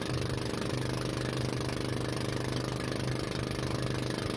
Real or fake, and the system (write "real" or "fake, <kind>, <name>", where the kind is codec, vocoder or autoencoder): real